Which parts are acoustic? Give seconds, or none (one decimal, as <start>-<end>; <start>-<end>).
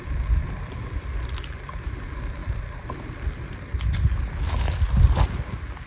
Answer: 0.0-5.9